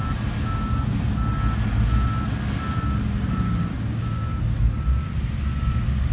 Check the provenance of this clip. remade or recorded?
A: recorded